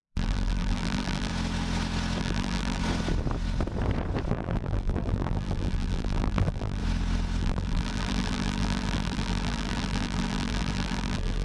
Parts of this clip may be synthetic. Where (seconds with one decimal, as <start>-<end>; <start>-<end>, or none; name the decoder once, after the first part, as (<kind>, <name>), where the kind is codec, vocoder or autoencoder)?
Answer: 0.0-1.3 (vocoder, BigVGAN v2); 2.2-2.8; 4.3-6.8; 7.4-11.4